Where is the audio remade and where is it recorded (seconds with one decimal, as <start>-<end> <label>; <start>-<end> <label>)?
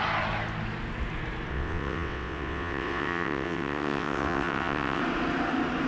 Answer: 0.0-1.5 recorded; 1.5-5.0 remade; 5.0-5.9 recorded